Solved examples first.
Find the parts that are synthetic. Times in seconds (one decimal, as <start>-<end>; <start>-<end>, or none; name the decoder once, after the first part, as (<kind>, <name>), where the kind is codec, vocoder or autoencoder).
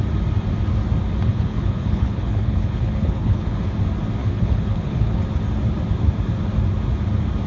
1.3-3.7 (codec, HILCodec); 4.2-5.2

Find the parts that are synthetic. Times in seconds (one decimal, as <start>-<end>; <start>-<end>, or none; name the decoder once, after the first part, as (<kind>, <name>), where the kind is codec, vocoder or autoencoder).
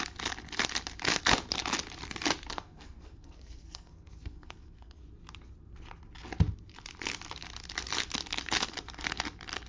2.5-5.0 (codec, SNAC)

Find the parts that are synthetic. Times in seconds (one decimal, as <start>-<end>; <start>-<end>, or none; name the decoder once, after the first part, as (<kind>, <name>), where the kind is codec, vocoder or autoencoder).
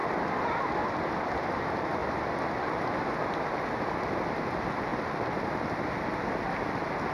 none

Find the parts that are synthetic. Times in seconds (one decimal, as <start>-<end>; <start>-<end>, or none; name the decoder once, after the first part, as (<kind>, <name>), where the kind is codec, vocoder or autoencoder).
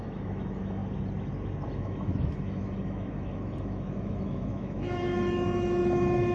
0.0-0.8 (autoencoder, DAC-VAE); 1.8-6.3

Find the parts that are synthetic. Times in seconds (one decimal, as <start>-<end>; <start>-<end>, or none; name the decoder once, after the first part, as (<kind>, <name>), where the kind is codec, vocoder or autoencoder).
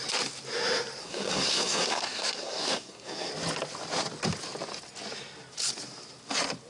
1.0-3.3 (codec, SNAC)